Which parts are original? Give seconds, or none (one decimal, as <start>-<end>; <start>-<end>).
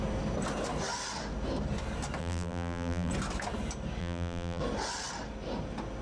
0.0-2.2; 3.1-4.0; 4.6-6.0